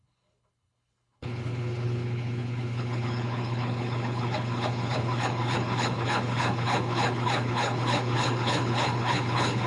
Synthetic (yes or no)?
yes